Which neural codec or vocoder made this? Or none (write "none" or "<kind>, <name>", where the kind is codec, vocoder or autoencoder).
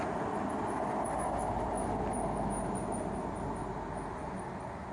none